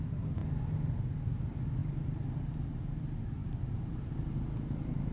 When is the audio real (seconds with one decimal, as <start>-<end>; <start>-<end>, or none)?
0.0-1.8; 2.8-3.4; 4.1-5.1